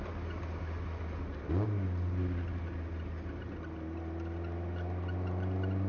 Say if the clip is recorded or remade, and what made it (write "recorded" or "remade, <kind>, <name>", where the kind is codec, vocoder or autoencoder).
recorded